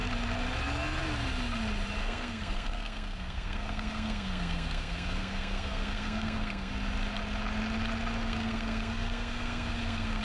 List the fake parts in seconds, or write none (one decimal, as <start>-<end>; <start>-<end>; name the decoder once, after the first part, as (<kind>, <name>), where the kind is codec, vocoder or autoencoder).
2.0-6.7 (codec, SNAC); 8.2-10.2